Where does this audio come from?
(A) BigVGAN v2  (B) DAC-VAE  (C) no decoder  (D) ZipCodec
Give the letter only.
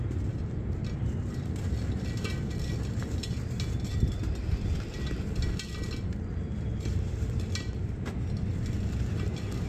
C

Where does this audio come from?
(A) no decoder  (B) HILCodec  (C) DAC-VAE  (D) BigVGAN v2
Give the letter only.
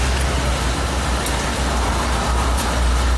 A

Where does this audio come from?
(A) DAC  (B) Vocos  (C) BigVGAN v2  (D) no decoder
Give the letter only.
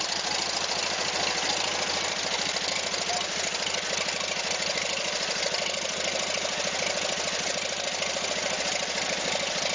D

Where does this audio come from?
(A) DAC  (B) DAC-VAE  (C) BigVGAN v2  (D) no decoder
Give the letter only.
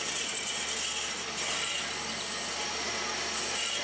D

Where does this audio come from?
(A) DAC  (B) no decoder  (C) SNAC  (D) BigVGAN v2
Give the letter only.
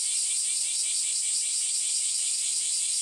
B